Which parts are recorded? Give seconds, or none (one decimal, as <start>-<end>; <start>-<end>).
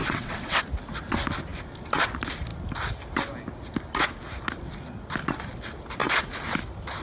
0.6-7.0